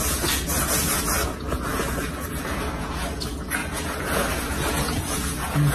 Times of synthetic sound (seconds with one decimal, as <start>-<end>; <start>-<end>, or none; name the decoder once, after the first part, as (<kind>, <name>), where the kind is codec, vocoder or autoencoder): 0.0-5.7 (vocoder, Vocos)

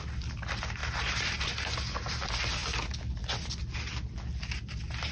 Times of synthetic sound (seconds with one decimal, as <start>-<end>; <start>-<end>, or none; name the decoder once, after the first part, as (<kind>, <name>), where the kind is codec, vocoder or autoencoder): none

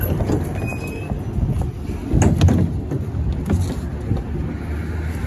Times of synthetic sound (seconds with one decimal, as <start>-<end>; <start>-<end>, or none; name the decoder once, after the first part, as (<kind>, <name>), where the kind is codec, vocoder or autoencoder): none